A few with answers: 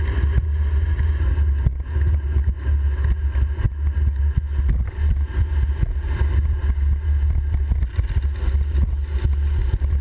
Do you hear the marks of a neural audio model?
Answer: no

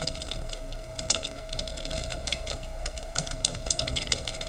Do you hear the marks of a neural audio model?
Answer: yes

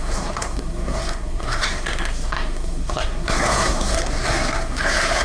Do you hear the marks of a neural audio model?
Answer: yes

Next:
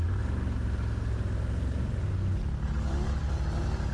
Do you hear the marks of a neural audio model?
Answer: no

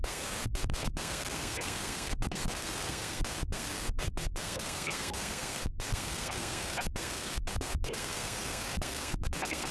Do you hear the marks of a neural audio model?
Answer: yes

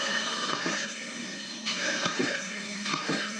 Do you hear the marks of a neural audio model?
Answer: yes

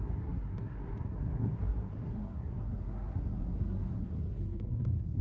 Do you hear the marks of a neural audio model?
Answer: yes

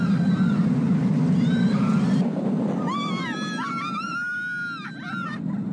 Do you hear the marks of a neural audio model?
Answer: no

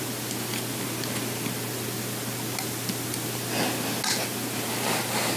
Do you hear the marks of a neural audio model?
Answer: no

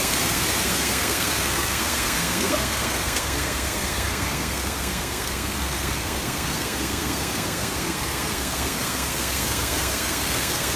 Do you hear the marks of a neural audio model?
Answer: yes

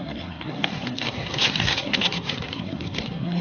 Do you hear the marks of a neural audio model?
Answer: yes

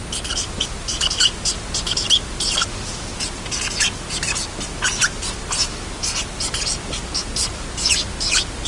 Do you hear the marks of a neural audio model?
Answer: no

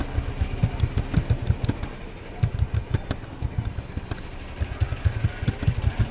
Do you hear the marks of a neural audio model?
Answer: no